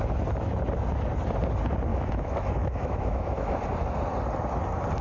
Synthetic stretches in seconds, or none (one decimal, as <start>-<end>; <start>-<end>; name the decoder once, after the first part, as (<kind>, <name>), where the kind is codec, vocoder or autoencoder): 1.9-3.6 (autoencoder, DAC-VAE)